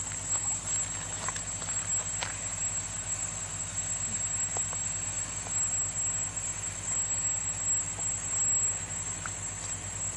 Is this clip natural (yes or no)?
yes